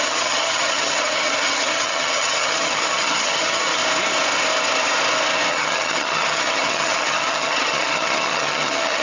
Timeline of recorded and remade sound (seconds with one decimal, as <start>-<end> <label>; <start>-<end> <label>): 0.0-3.8 remade; 3.8-5.5 recorded; 5.5-9.0 remade